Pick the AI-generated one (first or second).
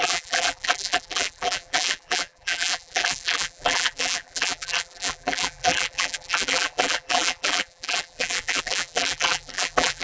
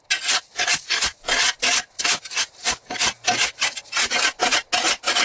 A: first